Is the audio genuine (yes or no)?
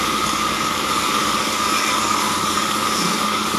no